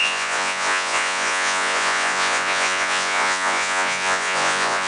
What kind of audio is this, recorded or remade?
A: remade